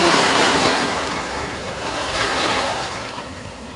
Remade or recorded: remade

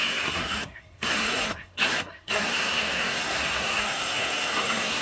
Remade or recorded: remade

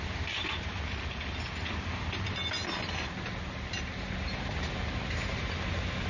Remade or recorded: recorded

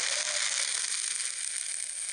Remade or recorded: recorded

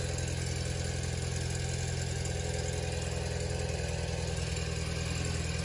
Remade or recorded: recorded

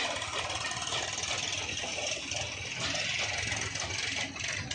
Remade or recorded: recorded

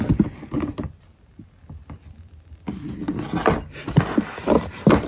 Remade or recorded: recorded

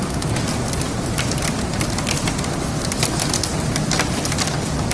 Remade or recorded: recorded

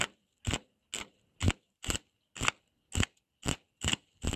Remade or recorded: recorded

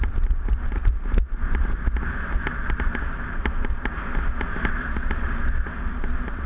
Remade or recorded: recorded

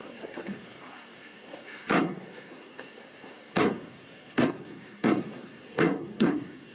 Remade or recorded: remade